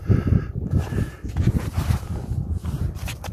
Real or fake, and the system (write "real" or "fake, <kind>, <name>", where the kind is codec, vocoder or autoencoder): real